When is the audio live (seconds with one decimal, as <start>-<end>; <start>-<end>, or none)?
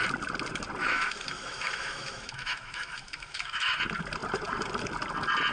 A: 0.0-0.8; 3.8-5.5